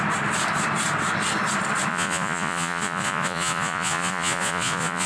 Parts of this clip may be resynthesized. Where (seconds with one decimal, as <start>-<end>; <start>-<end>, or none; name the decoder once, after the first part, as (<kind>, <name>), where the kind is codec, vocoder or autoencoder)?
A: 1.9-5.1 (vocoder, Vocos)